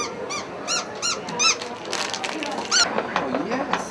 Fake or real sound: real